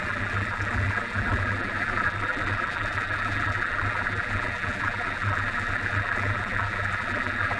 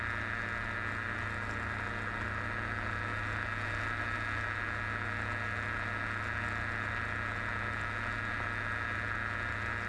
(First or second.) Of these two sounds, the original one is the second